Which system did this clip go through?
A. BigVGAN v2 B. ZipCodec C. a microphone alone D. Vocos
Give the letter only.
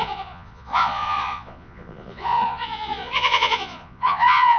D